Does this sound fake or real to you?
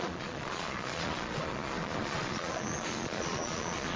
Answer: fake